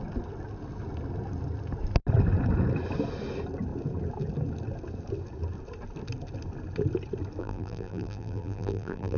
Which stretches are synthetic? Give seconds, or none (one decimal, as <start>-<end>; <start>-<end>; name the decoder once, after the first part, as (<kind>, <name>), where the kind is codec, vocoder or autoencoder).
7.4-9.2 (vocoder, BigVGAN v2)